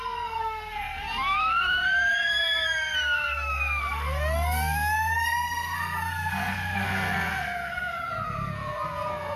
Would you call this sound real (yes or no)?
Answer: no